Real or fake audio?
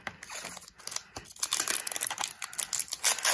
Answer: real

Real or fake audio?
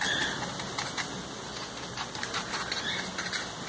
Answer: real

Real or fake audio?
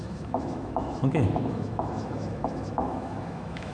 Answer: fake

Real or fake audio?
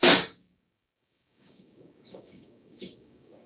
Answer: fake